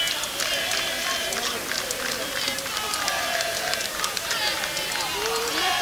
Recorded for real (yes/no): yes